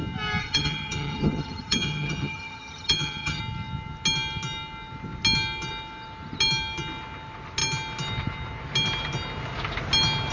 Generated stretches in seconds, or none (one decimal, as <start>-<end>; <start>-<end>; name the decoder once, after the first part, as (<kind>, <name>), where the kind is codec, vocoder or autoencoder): 0.4-3.4 (vocoder, HiFi-GAN)